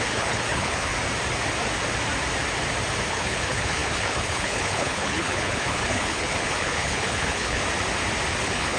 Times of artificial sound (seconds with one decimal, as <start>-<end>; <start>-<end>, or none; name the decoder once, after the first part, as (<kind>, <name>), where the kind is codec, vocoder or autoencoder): 0.0-0.9 (codec, HILCodec); 3.1-7.6; 8.4-8.8